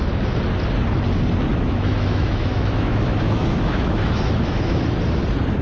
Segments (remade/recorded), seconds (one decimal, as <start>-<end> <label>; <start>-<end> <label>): 0.0-1.5 recorded; 1.5-4.8 remade; 4.8-5.6 recorded